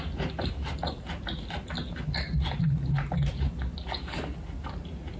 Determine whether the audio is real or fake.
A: real